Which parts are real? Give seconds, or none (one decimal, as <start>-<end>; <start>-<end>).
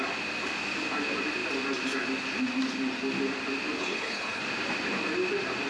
0.0-3.8; 4.4-5.7